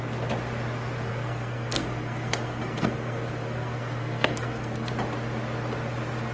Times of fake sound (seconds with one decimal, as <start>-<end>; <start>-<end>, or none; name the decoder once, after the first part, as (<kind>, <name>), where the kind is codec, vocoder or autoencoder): 1.1-4.9 (codec, SNAC)